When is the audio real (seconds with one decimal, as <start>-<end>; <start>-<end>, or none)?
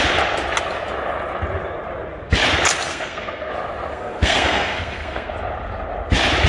0.0-2.9; 3.5-3.9; 5.3-6.5